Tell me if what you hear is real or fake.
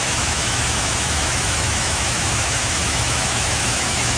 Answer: fake